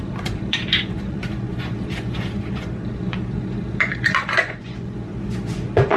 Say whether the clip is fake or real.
fake